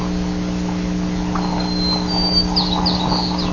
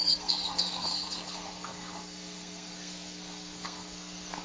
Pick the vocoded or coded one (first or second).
second